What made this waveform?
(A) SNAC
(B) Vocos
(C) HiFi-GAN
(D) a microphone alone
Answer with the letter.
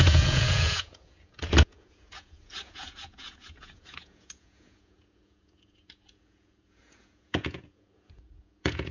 B